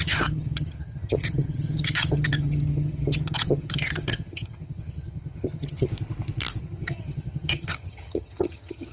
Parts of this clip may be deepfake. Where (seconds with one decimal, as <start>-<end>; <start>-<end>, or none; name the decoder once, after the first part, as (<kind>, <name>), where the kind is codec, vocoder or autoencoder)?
0.0-5.9 (vocoder, HiFi-GAN); 6.6-8.9